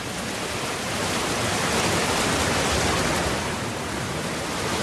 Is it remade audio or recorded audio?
recorded